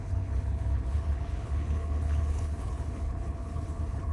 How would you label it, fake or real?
fake